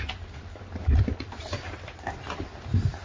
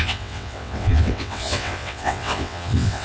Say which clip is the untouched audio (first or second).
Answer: first